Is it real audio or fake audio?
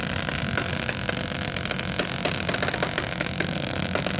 real